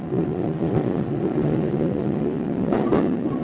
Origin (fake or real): fake